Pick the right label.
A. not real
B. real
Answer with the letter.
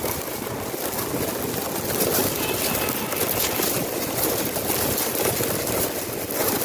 B